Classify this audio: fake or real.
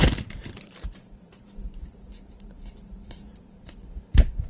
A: fake